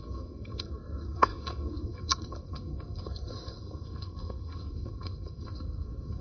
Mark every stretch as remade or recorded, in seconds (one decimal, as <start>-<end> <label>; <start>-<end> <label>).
0.0-6.2 remade